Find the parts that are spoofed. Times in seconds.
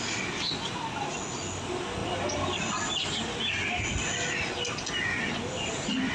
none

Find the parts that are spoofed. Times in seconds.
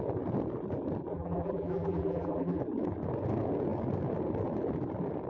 1.1-2.6 (vocoder, BigVGAN v2)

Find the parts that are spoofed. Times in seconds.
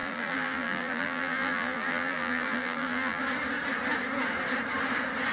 0.0-3.2 (vocoder, BigVGAN v2)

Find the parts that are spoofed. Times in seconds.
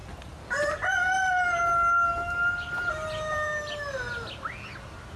2.1-4.0 (vocoder, BigVGAN v2)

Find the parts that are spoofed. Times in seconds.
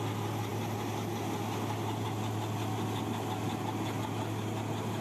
none